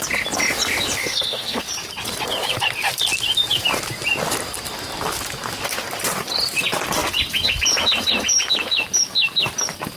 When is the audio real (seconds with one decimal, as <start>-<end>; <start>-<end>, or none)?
0.0-1.0; 1.6-10.0